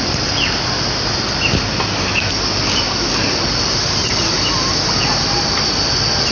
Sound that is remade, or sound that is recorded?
recorded